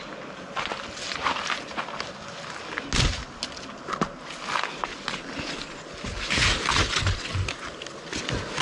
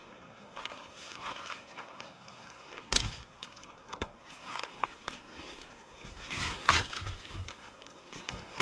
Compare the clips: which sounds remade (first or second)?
second